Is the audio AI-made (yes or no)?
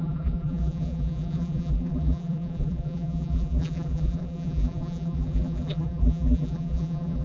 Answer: yes